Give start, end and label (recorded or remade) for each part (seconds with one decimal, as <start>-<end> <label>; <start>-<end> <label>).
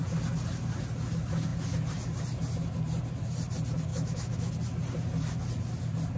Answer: 0.0-3.9 recorded; 3.9-4.5 remade; 4.5-6.2 recorded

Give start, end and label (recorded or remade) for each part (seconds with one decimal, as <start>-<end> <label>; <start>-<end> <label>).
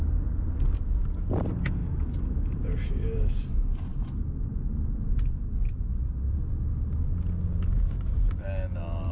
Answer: 0.0-9.1 recorded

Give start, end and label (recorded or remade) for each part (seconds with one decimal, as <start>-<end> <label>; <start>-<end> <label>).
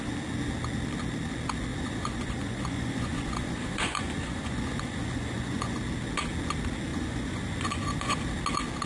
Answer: 0.0-1.7 recorded; 1.7-5.8 remade; 5.8-6.9 recorded; 6.9-8.2 remade; 8.2-8.9 recorded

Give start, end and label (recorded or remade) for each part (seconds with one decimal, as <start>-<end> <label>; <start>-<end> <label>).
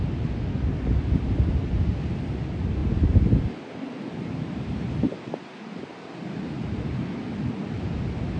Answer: 0.0-8.4 recorded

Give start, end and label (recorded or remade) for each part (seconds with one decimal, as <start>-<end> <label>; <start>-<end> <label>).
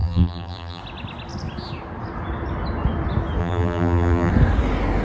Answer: 0.0-0.8 remade; 0.8-3.4 recorded; 3.4-4.3 remade; 4.3-5.0 recorded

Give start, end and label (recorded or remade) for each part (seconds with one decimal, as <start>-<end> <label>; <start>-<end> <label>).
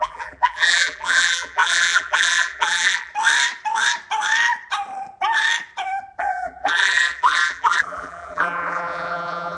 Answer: 0.0-3.1 remade; 3.1-6.2 recorded; 6.2-9.6 remade